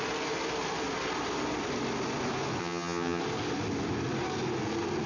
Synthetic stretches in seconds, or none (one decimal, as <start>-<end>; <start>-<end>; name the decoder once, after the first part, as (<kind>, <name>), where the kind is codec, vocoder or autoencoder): 2.6-3.2 (vocoder, HiFi-GAN)